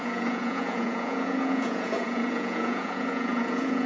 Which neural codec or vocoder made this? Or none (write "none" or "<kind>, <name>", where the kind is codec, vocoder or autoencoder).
vocoder, Vocos